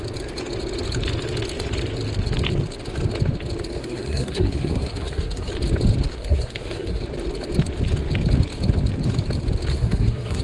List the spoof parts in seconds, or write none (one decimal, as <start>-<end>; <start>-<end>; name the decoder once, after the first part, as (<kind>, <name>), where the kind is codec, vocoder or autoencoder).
3.8-5.5 (codec, SNAC); 6.1-7.0; 9.7-10.4